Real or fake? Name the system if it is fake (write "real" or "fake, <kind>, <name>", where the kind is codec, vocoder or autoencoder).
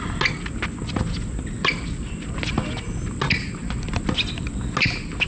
real